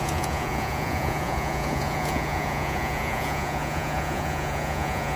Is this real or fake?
fake